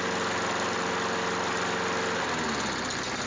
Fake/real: real